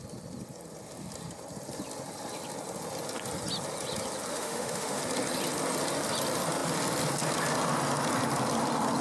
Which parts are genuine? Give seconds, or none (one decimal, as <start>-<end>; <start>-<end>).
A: 0.0-4.3; 5.0-9.0